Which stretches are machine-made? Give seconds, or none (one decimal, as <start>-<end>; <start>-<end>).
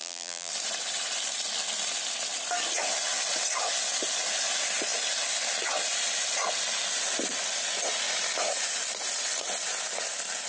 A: 0.0-0.5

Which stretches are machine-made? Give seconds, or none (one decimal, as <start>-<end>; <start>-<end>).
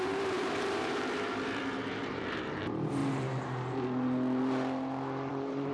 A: 0.0-3.0; 5.3-5.7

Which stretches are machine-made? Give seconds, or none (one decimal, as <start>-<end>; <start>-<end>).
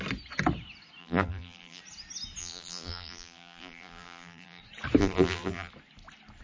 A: 1.0-1.8; 2.4-4.6; 5.0-5.7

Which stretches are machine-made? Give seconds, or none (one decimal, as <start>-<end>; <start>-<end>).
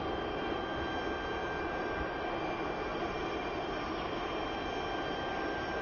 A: 1.4-2.4; 2.9-3.7